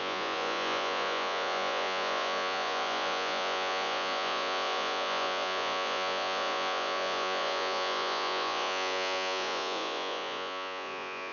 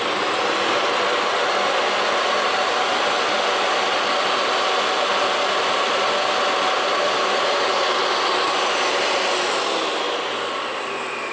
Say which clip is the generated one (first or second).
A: first